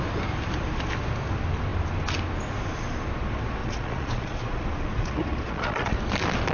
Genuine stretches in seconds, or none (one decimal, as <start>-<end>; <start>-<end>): 0.0-3.6; 6.0-6.5